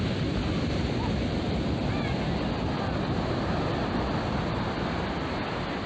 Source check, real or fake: fake